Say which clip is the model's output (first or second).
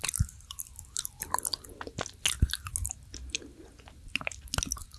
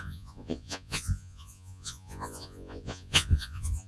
second